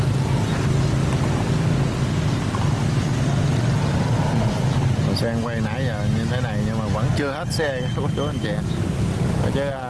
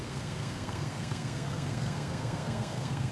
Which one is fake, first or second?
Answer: second